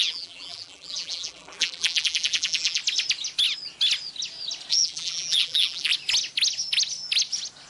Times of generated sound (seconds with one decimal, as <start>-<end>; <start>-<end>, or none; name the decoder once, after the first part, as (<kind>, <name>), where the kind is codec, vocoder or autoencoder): 0.0-2.8 (vocoder, BigVGAN v2); 4.7-5.9